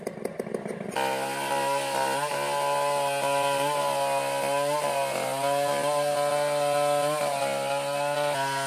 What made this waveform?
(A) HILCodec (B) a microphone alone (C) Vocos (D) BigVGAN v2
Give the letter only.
B